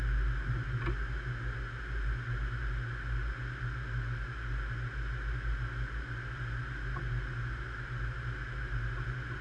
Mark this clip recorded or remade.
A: recorded